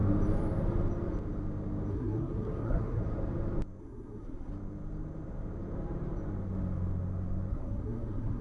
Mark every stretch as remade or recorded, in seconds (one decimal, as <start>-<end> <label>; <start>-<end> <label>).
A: 0.0-1.9 recorded; 1.9-3.0 remade; 3.0-3.8 recorded; 3.8-4.5 remade; 4.5-7.5 recorded; 7.5-8.4 remade